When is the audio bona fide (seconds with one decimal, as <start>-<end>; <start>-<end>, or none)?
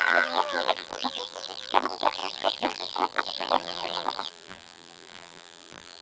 none